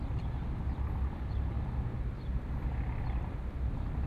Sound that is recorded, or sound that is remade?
recorded